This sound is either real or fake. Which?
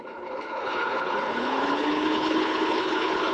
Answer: fake